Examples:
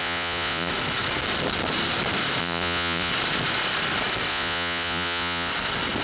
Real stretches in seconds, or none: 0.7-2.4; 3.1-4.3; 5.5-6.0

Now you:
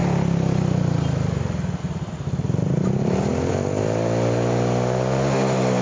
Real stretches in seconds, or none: 0.0-5.8

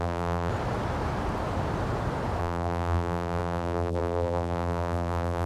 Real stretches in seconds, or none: 0.5-2.4

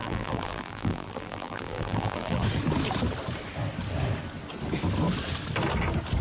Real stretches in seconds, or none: 2.4-6.2

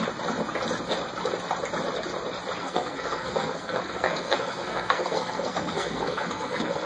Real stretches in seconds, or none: 0.0-2.6

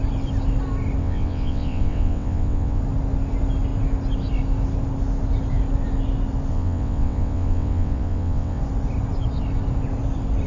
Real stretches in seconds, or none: 0.0-1.0; 2.8-6.5; 8.6-10.5

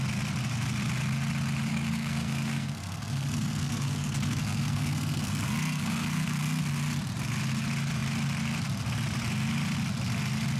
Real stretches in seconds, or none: 0.0-1.7; 6.6-10.6